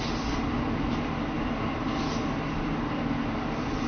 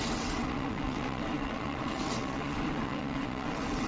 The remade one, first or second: second